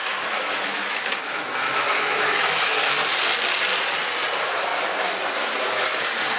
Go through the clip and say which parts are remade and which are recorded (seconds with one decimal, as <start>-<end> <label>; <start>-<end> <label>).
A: 0.0-2.9 remade; 2.9-6.4 recorded